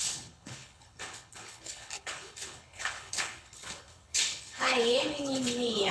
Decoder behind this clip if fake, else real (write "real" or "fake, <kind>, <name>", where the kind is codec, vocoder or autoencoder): fake, codec, HILCodec